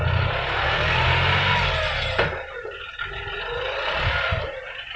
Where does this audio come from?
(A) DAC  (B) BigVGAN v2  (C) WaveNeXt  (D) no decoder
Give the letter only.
D